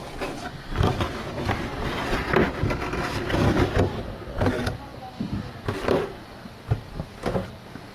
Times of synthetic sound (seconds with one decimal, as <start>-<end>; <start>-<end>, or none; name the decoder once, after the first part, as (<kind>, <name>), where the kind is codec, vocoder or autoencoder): none